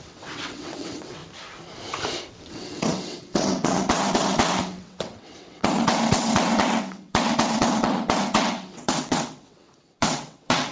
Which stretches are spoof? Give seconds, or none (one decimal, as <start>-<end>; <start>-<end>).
0.0-1.2; 2.3-10.7